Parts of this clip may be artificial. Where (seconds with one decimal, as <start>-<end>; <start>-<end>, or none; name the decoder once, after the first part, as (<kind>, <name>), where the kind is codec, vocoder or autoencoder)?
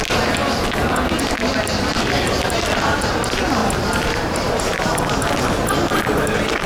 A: 3.6-5.4 (vocoder, BigVGAN v2)